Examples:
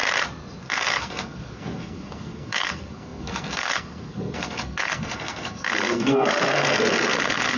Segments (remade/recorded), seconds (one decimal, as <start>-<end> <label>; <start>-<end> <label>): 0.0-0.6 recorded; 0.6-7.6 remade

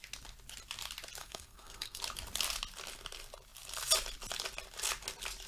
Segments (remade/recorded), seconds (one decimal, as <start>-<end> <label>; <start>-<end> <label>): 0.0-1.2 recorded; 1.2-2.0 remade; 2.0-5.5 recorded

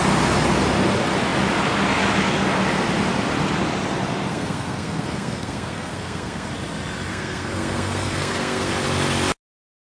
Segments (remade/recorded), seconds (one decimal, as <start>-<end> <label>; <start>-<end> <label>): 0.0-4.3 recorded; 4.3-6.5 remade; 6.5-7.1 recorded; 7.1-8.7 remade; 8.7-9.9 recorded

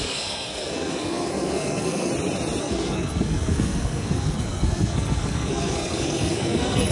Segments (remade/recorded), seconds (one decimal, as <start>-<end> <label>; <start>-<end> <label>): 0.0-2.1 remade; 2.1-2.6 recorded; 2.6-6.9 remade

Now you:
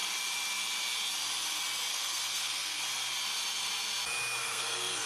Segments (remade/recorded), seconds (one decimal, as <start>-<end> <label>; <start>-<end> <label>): 0.0-1.9 recorded; 1.9-2.8 remade; 2.8-4.4 recorded; 4.4-5.1 remade